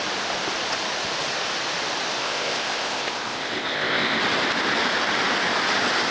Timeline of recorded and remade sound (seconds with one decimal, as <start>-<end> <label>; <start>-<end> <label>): 0.0-2.2 recorded; 2.2-4.2 remade; 4.2-6.1 recorded